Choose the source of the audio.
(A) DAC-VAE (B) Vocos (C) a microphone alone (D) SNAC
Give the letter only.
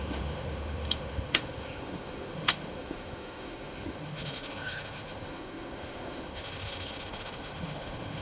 A